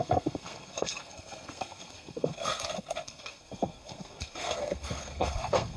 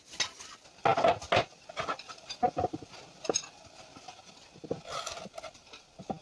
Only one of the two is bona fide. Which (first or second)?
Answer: second